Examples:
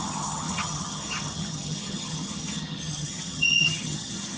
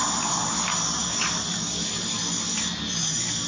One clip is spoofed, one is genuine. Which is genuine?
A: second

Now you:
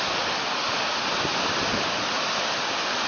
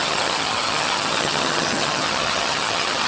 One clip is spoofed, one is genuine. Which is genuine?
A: first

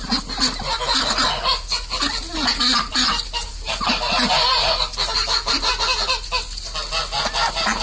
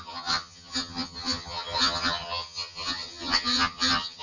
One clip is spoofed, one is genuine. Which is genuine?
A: first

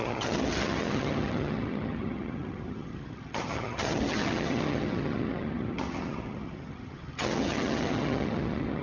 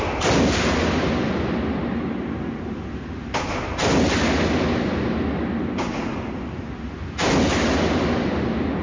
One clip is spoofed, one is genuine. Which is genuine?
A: second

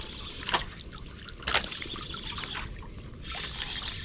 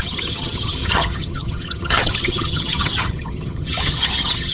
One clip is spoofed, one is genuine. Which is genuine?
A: first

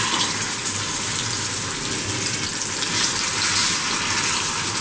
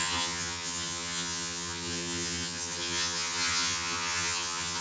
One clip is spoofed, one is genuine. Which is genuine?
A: first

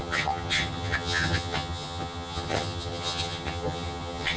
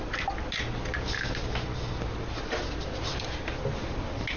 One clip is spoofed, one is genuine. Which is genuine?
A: second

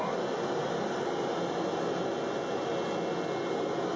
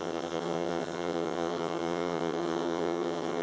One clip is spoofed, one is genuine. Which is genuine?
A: first